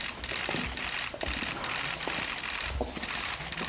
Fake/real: real